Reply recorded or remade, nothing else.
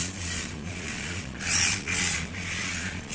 remade